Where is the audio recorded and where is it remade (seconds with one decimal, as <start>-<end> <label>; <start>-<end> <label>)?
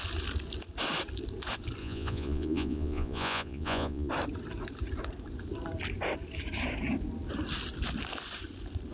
0.0-1.8 recorded; 1.8-4.1 remade; 4.1-8.9 recorded